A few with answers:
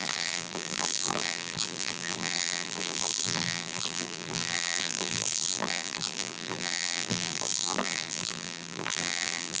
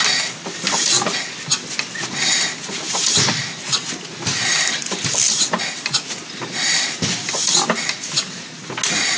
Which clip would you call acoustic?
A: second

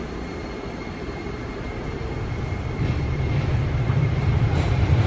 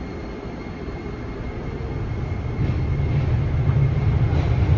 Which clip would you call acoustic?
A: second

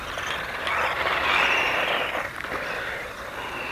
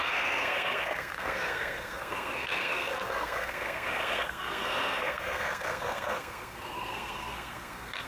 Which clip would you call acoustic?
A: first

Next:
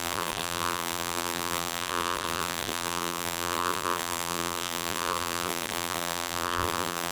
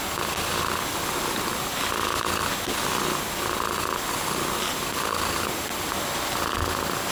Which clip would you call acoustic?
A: second